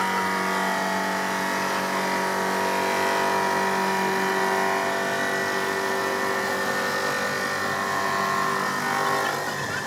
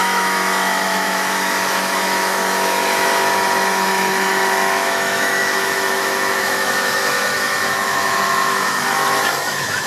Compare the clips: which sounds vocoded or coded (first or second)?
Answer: second